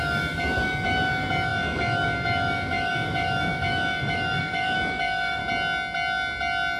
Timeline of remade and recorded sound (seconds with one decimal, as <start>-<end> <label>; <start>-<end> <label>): 0.0-5.4 remade; 5.4-6.8 recorded